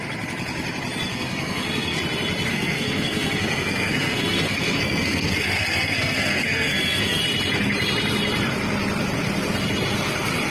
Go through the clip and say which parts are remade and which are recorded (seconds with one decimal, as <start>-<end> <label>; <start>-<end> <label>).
0.0-1.1 recorded; 1.1-2.0 remade; 2.0-2.5 recorded; 2.5-7.2 remade; 7.2-10.5 recorded